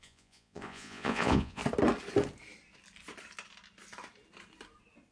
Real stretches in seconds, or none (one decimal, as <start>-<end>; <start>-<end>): 1.6-5.1